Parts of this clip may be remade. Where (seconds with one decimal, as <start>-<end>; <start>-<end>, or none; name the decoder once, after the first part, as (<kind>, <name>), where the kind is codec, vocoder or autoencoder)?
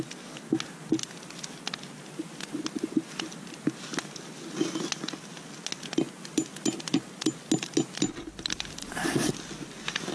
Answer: 8.8-9.3 (vocoder, Vocos)